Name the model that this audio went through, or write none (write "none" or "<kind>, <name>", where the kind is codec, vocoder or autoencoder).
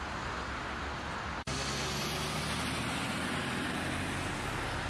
none